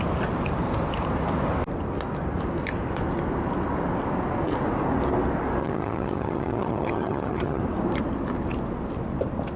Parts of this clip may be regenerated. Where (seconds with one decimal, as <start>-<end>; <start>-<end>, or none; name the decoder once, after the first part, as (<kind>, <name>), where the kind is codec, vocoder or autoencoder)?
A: 5.6-7.6 (vocoder, HiFi-GAN)